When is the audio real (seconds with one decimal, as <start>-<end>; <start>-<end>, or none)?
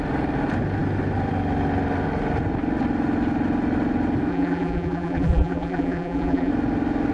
0.0-4.3; 6.5-7.1